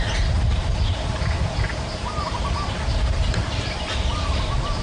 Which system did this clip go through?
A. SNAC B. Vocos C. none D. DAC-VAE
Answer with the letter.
C